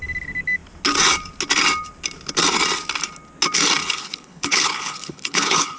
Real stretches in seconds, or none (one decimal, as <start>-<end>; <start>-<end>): 0.0-3.8